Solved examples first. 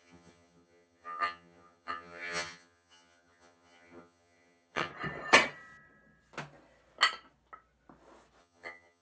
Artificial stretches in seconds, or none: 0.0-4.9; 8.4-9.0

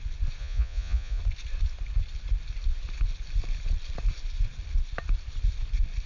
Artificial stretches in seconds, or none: 0.4-1.2

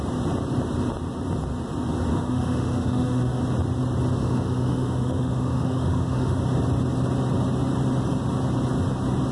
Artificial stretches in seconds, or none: 2.1-3.4; 4.2-6.4

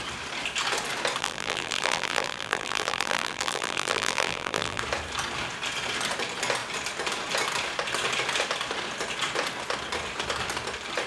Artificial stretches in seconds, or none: 1.2-4.8

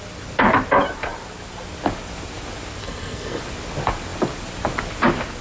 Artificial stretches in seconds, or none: 2.8-3.4